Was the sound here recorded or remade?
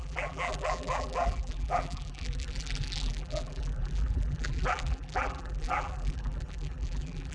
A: remade